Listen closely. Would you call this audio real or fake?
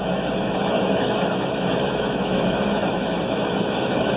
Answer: fake